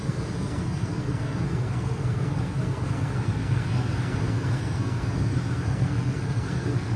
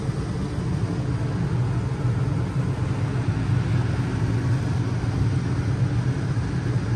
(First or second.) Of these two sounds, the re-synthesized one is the first